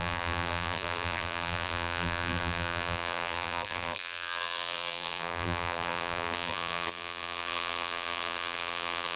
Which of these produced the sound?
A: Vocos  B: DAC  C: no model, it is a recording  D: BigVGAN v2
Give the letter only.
D